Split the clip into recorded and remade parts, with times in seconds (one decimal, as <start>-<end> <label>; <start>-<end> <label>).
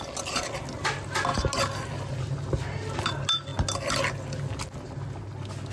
0.0-5.7 recorded